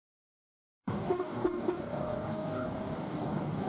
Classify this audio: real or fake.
fake